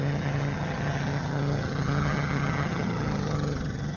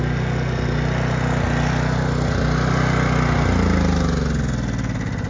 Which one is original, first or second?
second